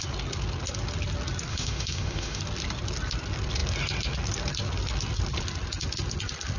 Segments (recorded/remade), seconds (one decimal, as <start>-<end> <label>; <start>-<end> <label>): 0.0-1.5 recorded; 1.5-2.4 remade; 2.4-6.6 recorded